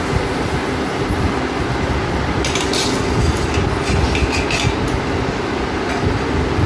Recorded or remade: recorded